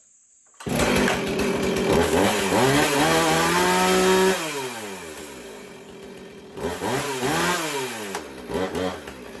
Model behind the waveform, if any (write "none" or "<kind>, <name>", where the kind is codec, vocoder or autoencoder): none